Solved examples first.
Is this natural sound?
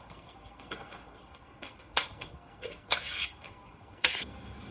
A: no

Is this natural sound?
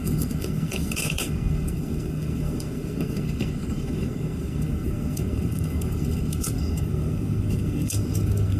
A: no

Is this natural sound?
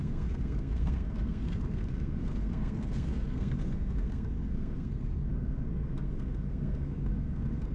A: no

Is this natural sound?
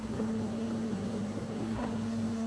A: no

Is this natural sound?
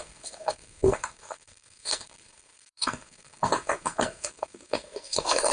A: no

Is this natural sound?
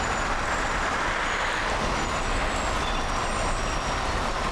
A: yes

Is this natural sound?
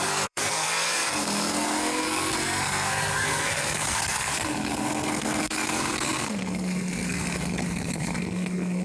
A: no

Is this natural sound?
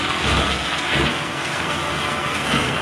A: no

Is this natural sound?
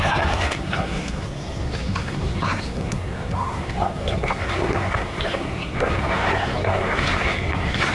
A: no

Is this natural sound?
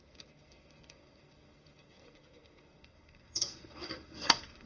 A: no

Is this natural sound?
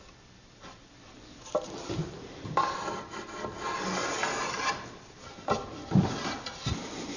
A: yes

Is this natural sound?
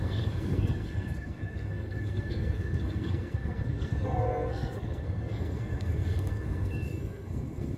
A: no